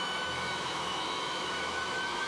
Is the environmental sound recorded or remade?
remade